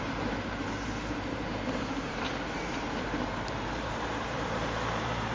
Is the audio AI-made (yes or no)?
yes